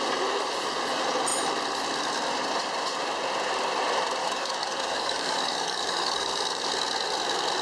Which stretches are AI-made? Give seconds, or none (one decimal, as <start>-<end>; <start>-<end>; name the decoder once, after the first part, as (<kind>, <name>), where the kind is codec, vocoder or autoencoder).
4.2-6.7 (codec, DAC)